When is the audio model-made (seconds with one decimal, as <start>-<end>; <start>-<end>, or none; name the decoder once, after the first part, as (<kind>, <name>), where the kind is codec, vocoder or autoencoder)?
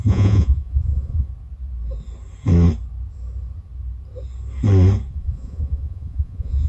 0.0-1.3 (vocoder, Vocos); 5.1-6.7